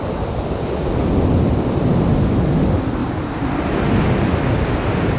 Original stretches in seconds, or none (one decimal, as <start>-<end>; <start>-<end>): 0.0-5.2